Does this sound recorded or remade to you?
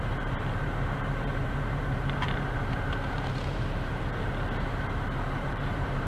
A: remade